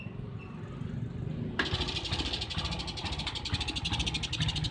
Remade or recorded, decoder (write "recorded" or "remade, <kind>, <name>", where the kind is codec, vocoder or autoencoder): recorded